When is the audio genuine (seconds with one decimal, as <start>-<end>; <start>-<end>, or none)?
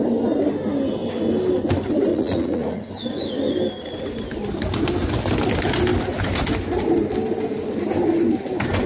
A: 0.0-2.1; 2.9-8.9